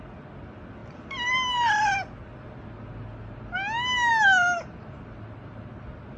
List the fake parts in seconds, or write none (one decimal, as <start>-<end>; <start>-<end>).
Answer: none